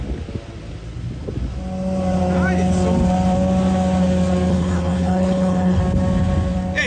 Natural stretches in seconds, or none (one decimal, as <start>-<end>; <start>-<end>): 0.0-4.5; 5.8-6.9

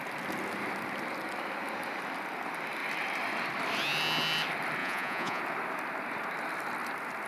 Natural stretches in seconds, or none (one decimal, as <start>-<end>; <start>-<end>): 0.0-4.8; 5.4-7.3

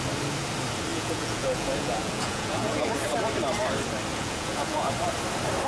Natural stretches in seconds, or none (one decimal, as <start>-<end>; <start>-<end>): 0.0-0.9; 2.9-4.1; 4.9-5.7

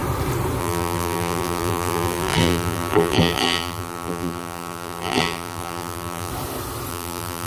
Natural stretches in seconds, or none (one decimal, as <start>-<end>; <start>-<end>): 0.0-0.6; 6.3-6.9

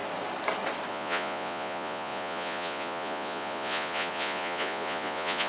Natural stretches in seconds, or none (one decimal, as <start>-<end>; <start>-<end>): 0.0-0.9

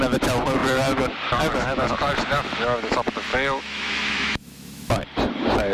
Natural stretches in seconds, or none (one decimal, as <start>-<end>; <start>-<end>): 0.0-3.3; 4.9-5.7

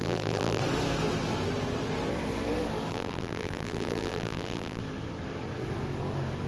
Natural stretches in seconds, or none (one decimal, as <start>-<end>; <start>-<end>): 0.6-2.9; 4.8-6.5